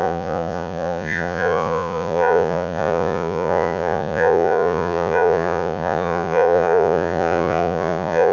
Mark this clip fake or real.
fake